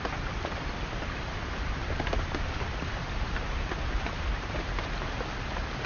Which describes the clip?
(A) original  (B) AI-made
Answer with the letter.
A